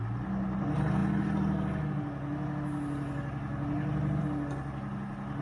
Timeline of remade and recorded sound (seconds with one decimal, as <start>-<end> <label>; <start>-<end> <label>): 0.0-5.4 recorded

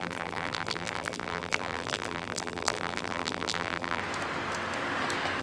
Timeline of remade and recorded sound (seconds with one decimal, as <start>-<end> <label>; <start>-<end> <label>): 0.0-4.0 remade; 4.0-5.4 recorded